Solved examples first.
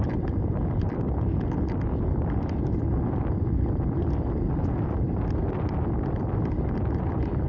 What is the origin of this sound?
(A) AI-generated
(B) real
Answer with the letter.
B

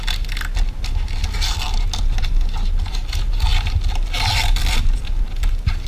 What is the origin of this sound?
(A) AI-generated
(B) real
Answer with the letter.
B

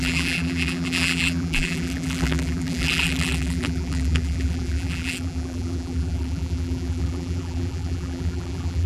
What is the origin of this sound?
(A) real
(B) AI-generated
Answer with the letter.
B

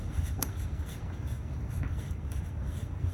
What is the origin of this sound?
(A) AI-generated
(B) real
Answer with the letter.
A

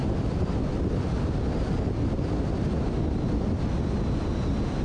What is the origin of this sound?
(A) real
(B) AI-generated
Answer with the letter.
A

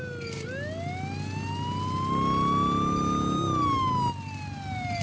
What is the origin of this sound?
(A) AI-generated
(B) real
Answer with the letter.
B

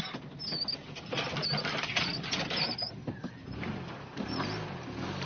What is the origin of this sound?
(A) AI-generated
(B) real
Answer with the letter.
B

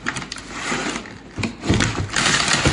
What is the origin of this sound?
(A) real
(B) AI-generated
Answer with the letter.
A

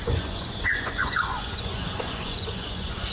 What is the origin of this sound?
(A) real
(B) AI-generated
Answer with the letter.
B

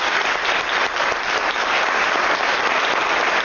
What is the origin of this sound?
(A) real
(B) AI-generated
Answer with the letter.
A